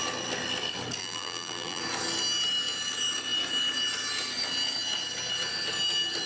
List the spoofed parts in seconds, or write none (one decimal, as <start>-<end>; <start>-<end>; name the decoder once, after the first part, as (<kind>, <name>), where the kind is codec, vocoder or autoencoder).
1.0-1.8 (vocoder, BigVGAN v2)